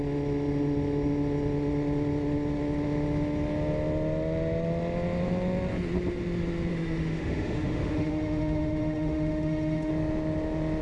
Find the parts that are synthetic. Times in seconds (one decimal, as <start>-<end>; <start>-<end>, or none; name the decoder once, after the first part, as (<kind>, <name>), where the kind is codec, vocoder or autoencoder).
6.7-9.9 (autoencoder, DAC-VAE)